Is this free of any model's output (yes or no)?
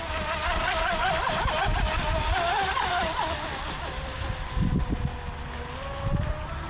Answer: yes